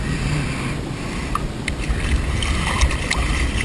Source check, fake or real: real